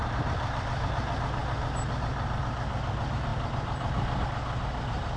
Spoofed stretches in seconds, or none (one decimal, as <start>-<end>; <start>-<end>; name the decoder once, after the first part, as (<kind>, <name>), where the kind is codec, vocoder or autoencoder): none